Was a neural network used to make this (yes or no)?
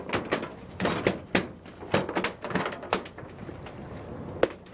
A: no